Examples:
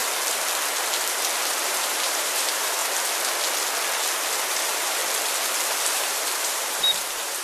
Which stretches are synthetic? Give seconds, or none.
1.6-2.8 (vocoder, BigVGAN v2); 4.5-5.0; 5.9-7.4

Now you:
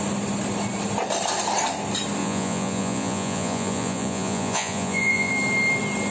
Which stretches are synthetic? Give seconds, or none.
2.2-5.3 (vocoder, Vocos)

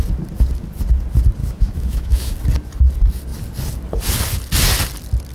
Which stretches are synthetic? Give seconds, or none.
1.4-2.3 (autoencoder, DAC-VAE)

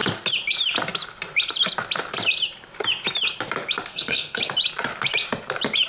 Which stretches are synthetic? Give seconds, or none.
3.9-4.4 (codec, SNAC)